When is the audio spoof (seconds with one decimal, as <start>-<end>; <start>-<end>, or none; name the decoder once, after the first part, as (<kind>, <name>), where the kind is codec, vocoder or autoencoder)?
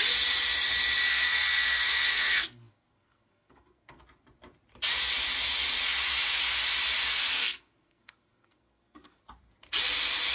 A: 1.1-4.0 (codec, SNAC); 7.1-9.2